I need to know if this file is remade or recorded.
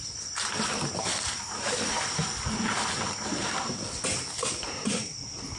recorded